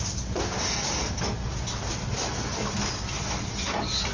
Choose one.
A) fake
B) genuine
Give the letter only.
B